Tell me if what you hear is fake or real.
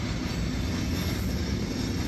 real